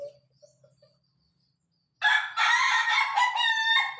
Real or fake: real